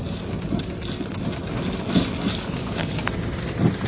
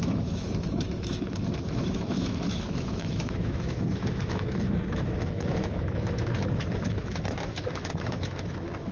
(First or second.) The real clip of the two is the first